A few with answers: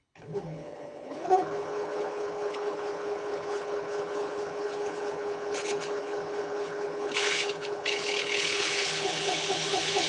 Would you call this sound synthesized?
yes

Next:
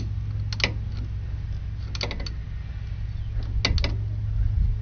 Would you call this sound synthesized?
no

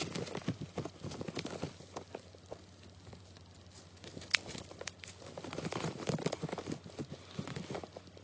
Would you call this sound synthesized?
no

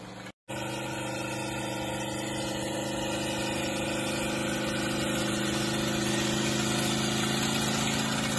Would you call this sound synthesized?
no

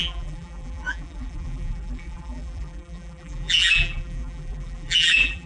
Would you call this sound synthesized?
yes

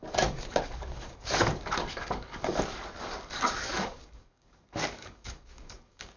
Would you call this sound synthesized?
yes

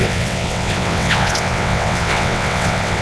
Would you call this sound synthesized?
yes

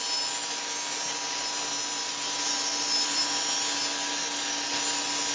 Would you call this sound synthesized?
no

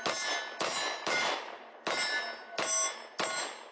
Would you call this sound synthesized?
no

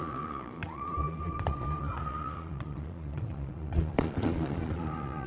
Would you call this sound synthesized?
yes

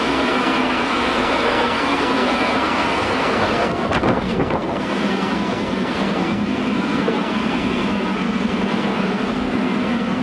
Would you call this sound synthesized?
yes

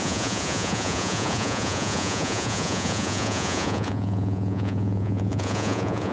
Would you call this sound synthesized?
yes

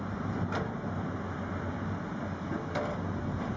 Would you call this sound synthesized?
no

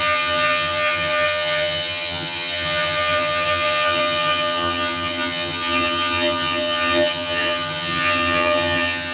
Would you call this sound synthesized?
yes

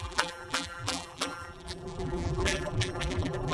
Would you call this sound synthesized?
yes